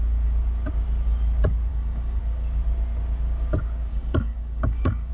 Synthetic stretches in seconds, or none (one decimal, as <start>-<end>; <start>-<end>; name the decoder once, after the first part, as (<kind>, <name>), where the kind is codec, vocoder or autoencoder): 1.7-2.2 (codec, DAC); 3.9-5.1